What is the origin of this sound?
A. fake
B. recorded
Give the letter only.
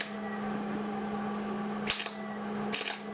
B